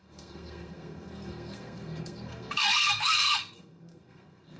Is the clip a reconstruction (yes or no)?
yes